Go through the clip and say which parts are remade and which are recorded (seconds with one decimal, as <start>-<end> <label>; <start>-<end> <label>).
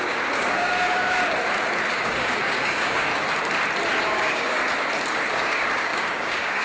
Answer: 0.0-1.2 remade; 1.2-1.9 recorded; 1.9-3.1 remade; 3.1-4.0 recorded; 4.0-4.6 remade; 4.6-5.3 recorded; 5.3-6.6 remade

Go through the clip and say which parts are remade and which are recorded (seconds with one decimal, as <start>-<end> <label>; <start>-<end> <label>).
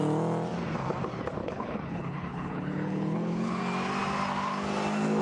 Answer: 0.0-1.4 recorded; 1.4-3.6 remade; 3.6-5.2 recorded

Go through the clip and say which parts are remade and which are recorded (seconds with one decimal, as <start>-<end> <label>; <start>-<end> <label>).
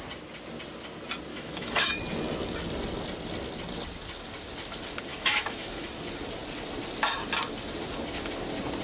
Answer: 0.0-1.3 recorded; 1.3-1.9 remade; 1.9-5.1 recorded; 5.1-5.9 remade; 5.9-8.8 recorded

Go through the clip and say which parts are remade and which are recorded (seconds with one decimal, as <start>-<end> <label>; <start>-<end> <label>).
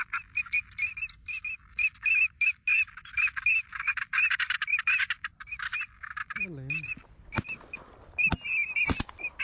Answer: 0.0-9.4 recorded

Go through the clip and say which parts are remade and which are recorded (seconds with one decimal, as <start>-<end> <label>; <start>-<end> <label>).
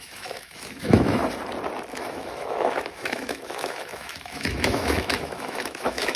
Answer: 0.0-1.2 remade; 1.2-1.9 recorded; 1.9-6.2 remade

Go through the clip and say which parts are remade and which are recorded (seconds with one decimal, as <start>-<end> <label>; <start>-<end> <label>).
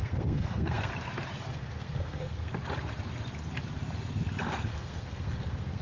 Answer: 0.0-0.9 remade; 0.9-1.5 recorded; 1.5-2.5 remade; 2.5-4.6 recorded; 4.6-5.8 remade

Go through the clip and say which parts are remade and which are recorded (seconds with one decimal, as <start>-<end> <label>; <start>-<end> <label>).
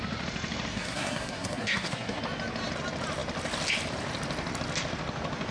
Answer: 0.0-0.7 recorded; 0.7-2.2 remade; 2.2-5.5 recorded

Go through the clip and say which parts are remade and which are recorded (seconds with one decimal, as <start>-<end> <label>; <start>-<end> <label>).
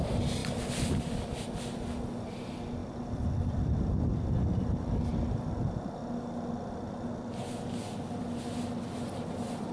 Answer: 0.0-9.7 recorded